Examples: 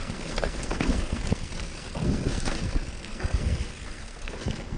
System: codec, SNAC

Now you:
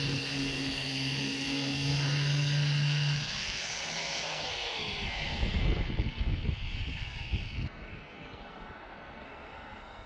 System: codec, SNAC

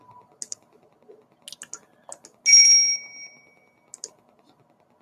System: none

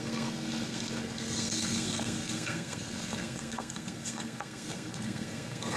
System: codec, SNAC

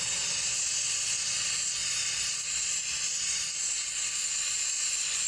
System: none